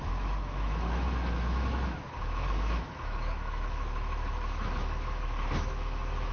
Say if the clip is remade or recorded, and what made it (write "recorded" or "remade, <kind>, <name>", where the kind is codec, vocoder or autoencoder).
remade, autoencoder, DAC-VAE